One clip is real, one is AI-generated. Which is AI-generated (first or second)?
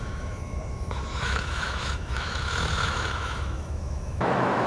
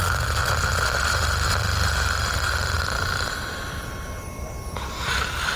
first